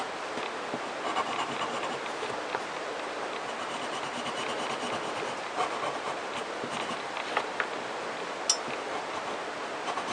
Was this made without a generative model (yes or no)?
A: yes